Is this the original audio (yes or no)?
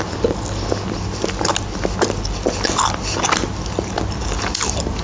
yes